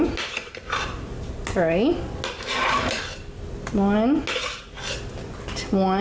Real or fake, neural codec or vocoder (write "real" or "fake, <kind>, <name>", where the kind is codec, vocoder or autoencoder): real